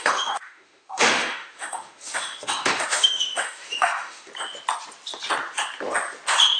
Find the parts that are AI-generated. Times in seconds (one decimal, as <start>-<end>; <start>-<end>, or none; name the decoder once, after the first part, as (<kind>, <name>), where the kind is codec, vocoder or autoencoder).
0.0-4.3 (autoencoder, DAC-VAE)